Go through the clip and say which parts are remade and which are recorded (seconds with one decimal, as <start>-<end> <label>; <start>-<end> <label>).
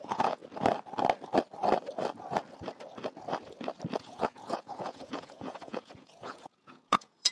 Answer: 0.0-0.4 remade; 0.4-4.0 recorded; 4.0-7.3 remade